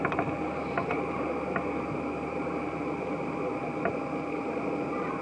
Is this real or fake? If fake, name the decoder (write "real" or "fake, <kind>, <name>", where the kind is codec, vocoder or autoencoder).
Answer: real